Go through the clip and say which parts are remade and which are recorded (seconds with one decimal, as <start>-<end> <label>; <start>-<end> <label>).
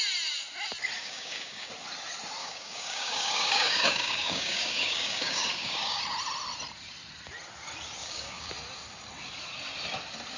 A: 0.0-1.0 recorded; 1.0-1.7 remade; 1.7-2.4 recorded; 2.4-6.0 remade; 6.0-8.0 recorded; 8.0-8.5 remade; 8.5-10.4 recorded